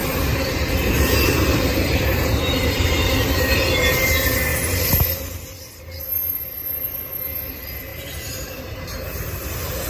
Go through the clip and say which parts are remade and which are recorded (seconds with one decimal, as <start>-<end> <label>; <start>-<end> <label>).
0.0-3.7 remade; 3.7-4.5 recorded; 4.5-6.0 remade; 6.0-7.9 recorded; 7.9-9.5 remade; 9.5-9.9 recorded